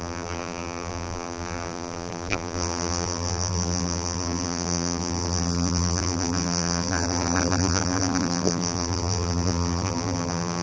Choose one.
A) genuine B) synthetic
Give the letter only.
B